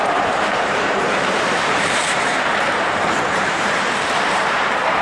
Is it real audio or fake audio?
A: fake